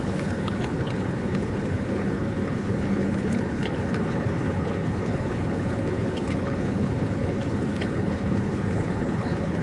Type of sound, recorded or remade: remade